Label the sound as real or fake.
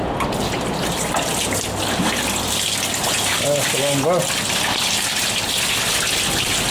real